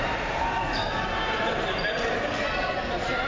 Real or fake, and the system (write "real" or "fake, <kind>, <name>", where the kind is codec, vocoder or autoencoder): real